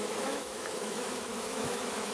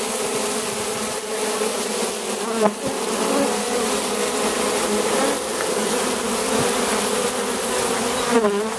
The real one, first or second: second